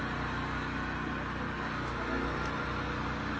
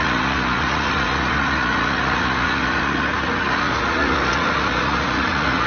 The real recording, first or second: first